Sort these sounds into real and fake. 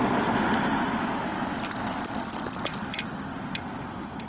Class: real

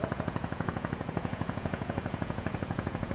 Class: fake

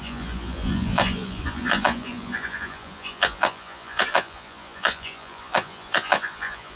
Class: fake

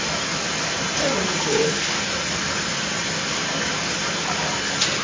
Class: real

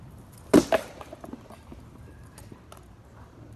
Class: real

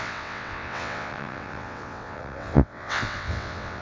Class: fake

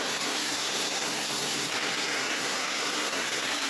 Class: fake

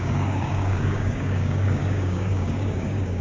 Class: fake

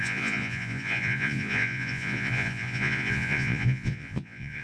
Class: fake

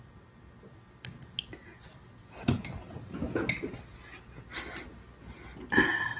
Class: real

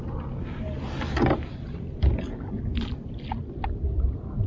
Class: real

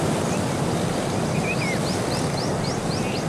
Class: real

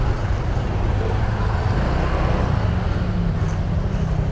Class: real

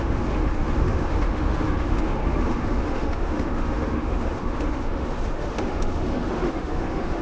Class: fake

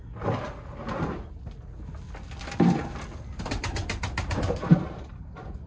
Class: real